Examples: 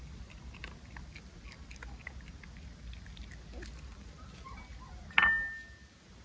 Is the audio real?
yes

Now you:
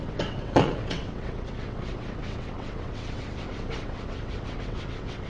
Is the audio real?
no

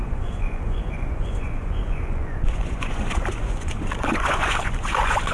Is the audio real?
no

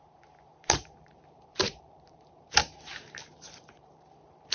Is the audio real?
no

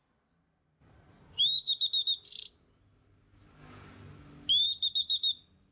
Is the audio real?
yes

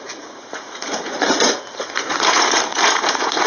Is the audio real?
no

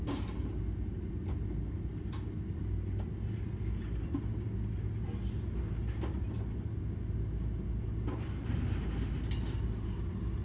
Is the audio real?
yes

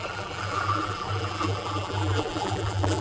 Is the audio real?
no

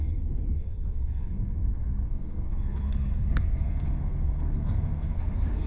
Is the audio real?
no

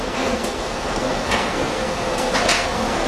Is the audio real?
no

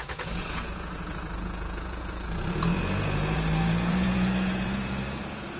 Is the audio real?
no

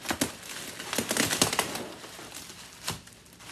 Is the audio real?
yes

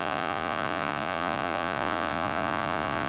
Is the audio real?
no